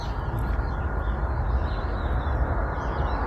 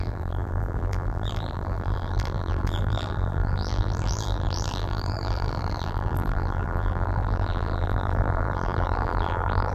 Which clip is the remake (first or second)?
second